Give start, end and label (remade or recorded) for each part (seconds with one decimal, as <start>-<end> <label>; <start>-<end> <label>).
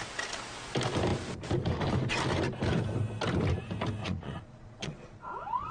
0.0-4.0 recorded; 4.0-5.7 remade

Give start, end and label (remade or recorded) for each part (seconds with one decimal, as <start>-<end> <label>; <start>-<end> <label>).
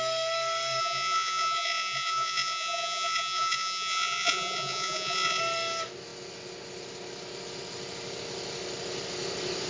0.0-0.8 recorded; 0.8-5.4 remade; 5.4-9.7 recorded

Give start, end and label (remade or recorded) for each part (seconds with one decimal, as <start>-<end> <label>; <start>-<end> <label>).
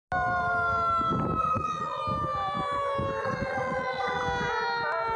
0.0-1.4 recorded; 1.4-2.0 remade; 2.0-3.2 recorded; 3.2-4.2 remade; 4.2-5.2 recorded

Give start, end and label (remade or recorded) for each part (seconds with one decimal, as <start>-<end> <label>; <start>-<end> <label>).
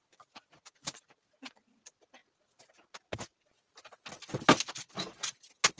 0.0-1.8 remade; 1.8-5.8 recorded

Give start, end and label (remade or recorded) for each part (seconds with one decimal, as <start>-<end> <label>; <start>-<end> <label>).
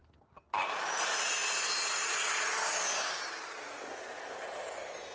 0.0-5.1 recorded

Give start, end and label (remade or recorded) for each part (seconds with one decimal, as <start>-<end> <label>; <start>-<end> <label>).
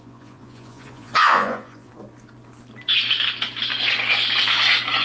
0.0-1.9 remade; 1.9-5.0 recorded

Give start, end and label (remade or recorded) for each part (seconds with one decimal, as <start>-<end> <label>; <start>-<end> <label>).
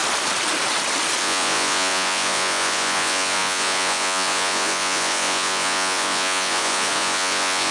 0.0-1.2 recorded; 1.2-7.7 remade